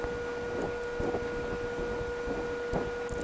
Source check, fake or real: real